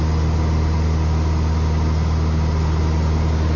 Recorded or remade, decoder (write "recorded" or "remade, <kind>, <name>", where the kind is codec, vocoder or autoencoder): recorded